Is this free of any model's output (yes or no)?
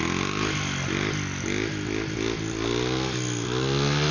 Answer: yes